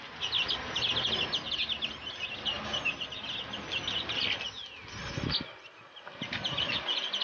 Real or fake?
real